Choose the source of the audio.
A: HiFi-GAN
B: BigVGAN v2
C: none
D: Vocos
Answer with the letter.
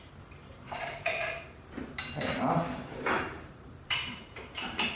B